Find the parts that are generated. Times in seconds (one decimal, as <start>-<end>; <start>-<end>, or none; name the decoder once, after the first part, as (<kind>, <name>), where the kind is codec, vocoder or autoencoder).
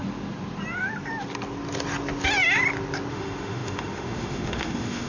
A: 3.1-5.1 (autoencoder, DAC-VAE)